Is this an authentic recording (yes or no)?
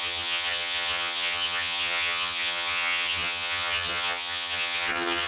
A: no